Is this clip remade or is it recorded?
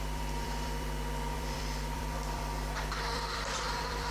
remade